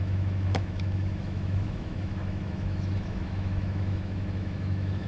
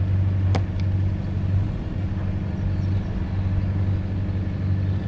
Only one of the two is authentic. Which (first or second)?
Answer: second